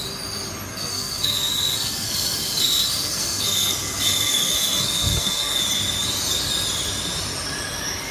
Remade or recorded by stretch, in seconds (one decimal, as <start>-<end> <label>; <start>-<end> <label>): 0.0-0.7 recorded; 0.7-5.6 remade; 5.6-8.1 recorded